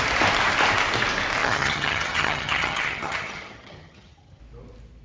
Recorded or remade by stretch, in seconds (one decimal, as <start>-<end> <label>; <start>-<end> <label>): 0.0-1.4 recorded; 1.4-4.4 remade; 4.4-5.0 recorded